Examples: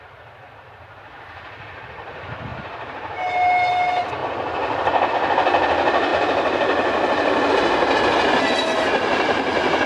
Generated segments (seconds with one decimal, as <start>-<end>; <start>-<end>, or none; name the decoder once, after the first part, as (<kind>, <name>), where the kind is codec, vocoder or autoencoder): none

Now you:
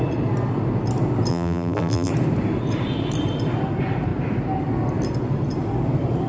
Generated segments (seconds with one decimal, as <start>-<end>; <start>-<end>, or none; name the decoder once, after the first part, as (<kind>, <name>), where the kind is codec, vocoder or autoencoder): 1.3-2.1 (vocoder, BigVGAN v2)

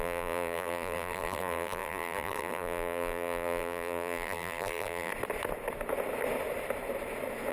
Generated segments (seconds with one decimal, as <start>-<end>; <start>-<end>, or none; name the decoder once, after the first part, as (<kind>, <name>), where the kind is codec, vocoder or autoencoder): 0.0-5.1 (vocoder, BigVGAN v2)

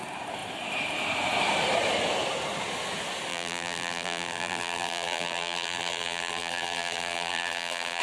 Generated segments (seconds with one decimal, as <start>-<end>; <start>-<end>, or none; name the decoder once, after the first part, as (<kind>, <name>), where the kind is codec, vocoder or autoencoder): 3.3-8.0 (vocoder, BigVGAN v2)

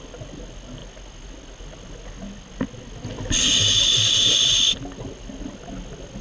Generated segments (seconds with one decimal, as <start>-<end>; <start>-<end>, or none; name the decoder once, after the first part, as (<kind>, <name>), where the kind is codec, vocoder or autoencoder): none